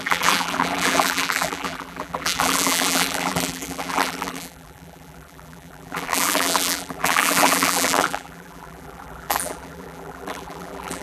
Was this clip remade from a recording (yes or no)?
yes